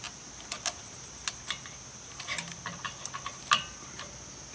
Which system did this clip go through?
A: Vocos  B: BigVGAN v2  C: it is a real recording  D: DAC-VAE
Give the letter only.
C